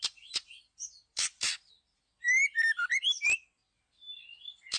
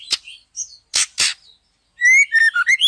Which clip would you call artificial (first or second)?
first